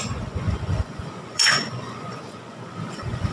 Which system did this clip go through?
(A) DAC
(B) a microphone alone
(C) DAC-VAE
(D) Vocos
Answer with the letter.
D